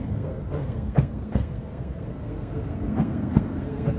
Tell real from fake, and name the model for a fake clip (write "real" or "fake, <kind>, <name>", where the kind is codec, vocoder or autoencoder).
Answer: fake, codec, SNAC